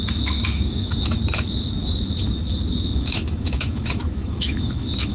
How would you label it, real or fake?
fake